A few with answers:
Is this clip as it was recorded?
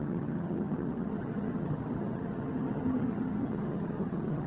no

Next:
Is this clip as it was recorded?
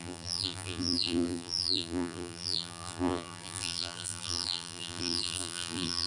no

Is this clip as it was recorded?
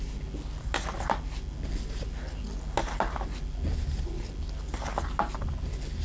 yes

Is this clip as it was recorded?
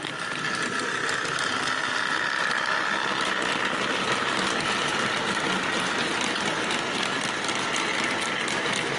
yes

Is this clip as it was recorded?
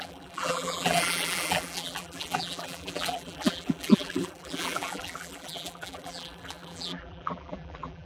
no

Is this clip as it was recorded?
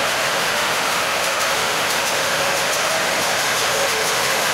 no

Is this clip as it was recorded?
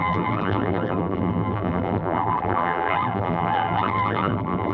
no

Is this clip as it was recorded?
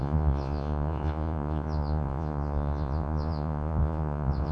no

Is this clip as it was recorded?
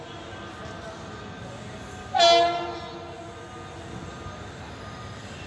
yes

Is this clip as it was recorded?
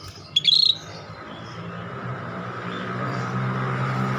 no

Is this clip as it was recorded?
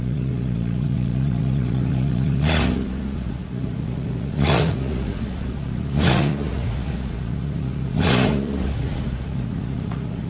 no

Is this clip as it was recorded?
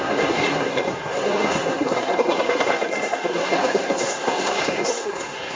no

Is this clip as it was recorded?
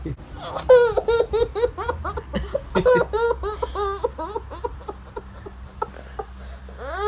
yes